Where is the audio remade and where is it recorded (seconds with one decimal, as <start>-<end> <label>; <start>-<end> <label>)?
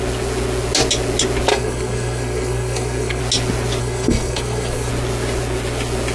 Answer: 0.0-1.5 recorded; 1.5-3.2 remade; 3.2-3.8 recorded; 3.8-4.9 remade; 4.9-6.1 recorded